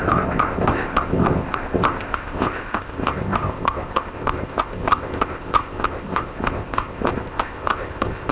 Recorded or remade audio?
remade